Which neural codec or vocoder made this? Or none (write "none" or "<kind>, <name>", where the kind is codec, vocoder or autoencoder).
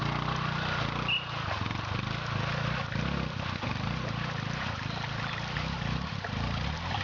none